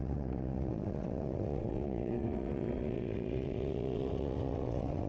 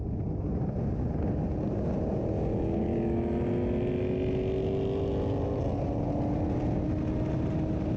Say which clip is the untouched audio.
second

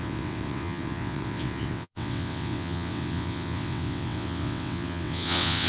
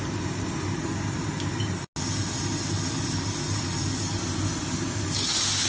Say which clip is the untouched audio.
second